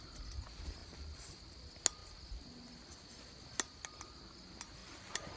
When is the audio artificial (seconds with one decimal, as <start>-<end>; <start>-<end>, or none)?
0.8-1.4; 4.8-5.4